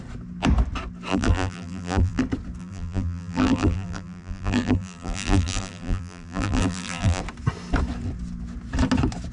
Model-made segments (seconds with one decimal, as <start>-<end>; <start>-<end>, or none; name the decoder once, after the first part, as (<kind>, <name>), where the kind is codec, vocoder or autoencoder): 1.1-2.2 (vocoder, BigVGAN v2); 2.6-7.2